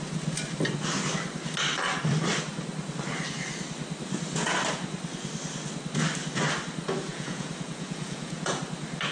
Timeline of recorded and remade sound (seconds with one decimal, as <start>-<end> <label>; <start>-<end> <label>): 0.0-7.1 recorded; 7.1-8.6 remade; 8.6-9.1 recorded